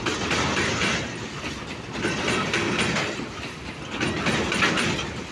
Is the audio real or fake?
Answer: real